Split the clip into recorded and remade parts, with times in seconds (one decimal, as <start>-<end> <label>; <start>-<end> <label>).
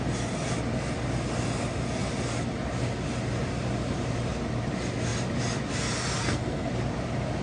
0.0-6.2 recorded; 6.2-6.7 remade; 6.7-7.4 recorded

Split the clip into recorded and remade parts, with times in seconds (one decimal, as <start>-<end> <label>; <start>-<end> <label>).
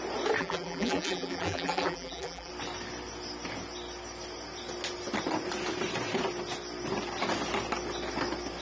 0.0-0.4 recorded; 0.4-2.5 remade; 2.5-8.6 recorded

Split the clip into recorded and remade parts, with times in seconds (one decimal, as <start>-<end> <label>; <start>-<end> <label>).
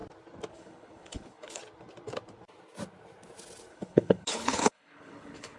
0.0-0.5 recorded; 0.5-1.6 remade; 1.6-3.7 recorded; 3.7-5.6 remade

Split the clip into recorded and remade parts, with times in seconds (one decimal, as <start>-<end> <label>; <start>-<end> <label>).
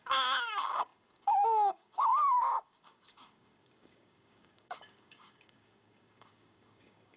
0.0-7.2 remade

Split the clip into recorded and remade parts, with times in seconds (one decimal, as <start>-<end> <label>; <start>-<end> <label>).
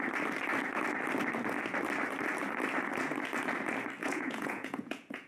0.0-4.0 recorded; 4.0-5.3 remade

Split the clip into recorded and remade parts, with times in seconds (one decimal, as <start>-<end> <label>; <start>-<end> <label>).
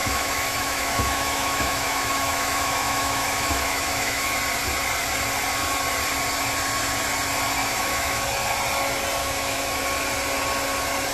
0.0-4.4 remade; 4.4-7.6 recorded; 7.6-8.2 remade; 8.2-9.2 recorded; 9.2-9.8 remade; 9.8-11.1 recorded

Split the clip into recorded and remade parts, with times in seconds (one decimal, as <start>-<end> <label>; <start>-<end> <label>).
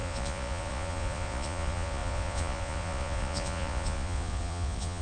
0.0-5.0 remade